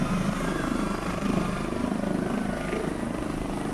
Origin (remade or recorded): remade